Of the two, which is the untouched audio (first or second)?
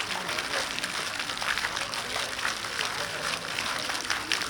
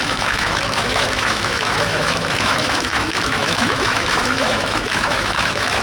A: first